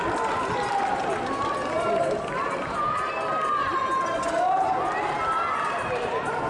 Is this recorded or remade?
recorded